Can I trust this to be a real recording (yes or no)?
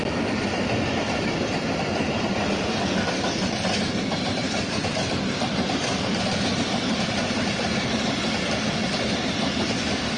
no